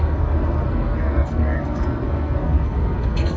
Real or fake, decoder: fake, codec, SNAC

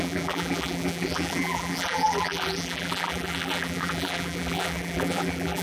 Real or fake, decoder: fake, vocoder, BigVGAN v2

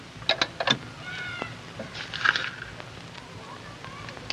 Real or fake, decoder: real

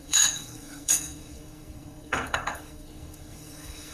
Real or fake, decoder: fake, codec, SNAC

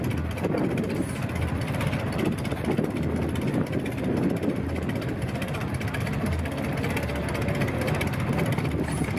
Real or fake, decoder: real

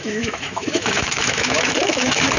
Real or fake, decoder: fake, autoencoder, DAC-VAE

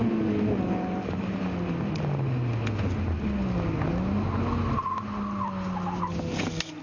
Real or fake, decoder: real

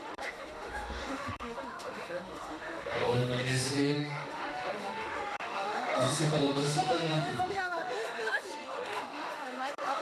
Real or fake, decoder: fake, autoencoder, DAC-VAE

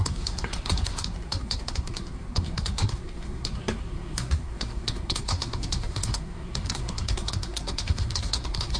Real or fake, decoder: fake, codec, SNAC